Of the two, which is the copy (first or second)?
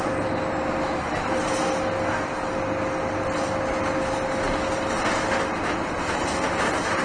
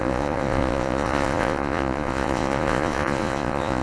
second